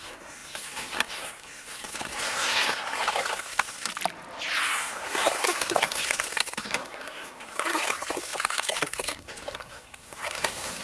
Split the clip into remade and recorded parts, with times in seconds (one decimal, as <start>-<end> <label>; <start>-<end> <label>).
0.0-3.9 remade; 3.9-4.7 recorded; 4.7-10.8 remade